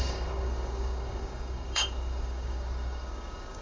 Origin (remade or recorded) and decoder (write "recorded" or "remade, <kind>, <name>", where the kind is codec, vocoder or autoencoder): remade, codec, DAC